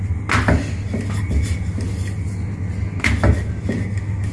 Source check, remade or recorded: recorded